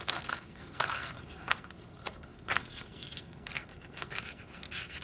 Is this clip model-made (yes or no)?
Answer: yes